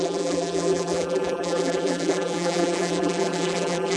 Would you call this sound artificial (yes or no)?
yes